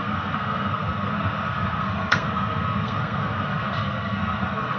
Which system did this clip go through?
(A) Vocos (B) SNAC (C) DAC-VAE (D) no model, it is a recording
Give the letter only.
B